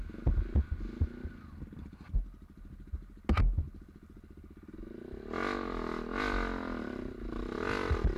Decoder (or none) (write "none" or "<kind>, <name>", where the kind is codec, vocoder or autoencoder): none